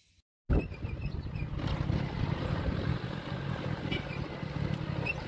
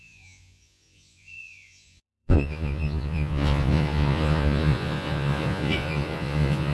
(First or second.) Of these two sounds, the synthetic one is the second